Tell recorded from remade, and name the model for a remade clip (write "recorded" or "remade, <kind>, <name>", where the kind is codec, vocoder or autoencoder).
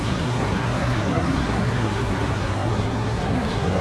remade, codec, SNAC